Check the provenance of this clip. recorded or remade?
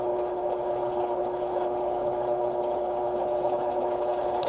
remade